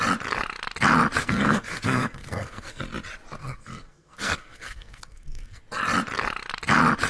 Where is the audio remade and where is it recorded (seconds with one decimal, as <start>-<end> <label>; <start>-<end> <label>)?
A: 0.0-1.2 recorded; 1.2-2.8 remade; 2.8-3.4 recorded; 3.4-5.6 remade; 5.6-7.1 recorded